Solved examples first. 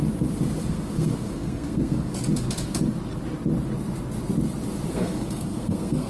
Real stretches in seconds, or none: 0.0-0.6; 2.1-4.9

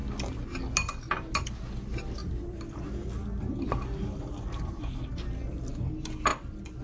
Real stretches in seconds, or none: 0.0-6.8

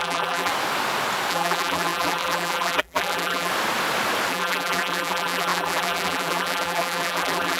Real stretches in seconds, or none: 0.5-1.3; 3.5-4.3

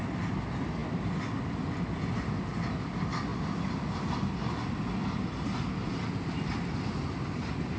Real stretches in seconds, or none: 0.0-7.8

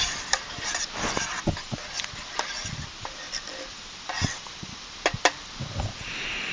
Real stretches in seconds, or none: 0.0-6.5

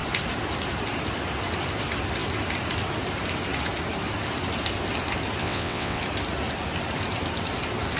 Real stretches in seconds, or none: 0.0-5.4; 6.0-8.0

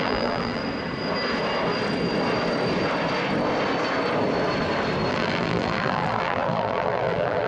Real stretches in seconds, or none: 0.6-5.1

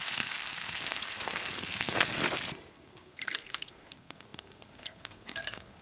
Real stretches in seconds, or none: 2.2-2.7